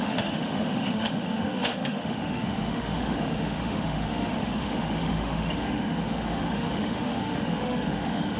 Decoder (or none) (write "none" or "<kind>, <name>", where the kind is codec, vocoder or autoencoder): autoencoder, DAC-VAE